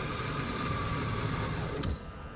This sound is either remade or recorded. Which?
remade